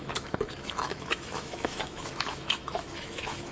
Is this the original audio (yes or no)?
no